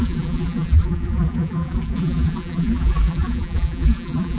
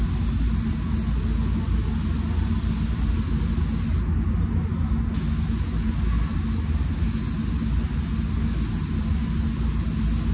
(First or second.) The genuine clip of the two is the second